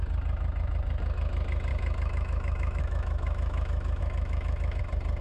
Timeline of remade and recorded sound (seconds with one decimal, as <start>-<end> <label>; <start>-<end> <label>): 0.0-1.7 recorded; 1.7-4.8 remade; 4.8-5.2 recorded